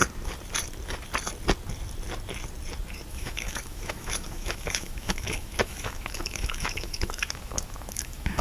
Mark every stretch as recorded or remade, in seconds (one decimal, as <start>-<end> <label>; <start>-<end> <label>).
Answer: 0.0-3.1 recorded; 3.1-8.4 remade